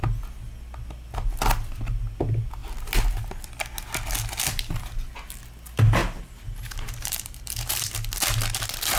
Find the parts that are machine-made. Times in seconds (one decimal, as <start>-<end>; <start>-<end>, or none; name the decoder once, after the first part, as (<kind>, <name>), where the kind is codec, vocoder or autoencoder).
6.0-7.9 (vocoder, BigVGAN v2)